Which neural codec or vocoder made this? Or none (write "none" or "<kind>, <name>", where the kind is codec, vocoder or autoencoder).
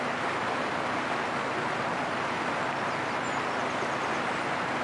none